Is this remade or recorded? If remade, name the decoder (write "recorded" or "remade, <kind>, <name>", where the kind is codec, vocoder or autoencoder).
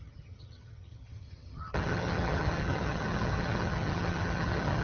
remade, vocoder, HiFi-GAN